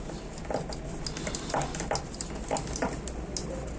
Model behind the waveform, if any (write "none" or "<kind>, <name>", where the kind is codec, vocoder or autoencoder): none